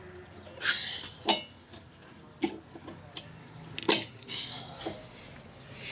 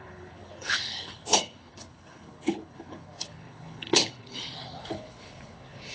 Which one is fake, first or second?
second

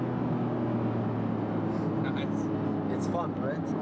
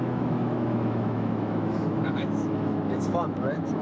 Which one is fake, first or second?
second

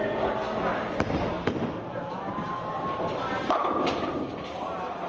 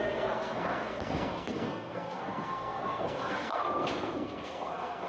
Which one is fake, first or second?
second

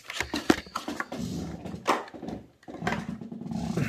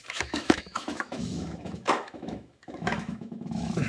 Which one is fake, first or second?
second